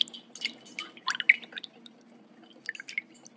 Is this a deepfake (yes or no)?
no